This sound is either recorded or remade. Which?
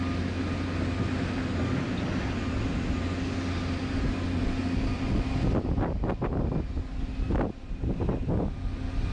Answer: recorded